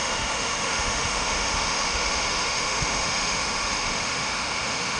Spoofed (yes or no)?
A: yes